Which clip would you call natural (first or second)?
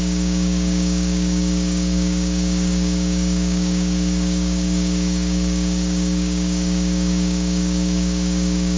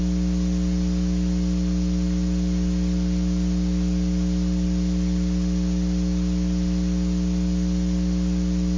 second